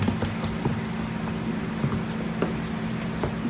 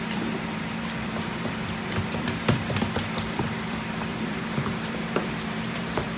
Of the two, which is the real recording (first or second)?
first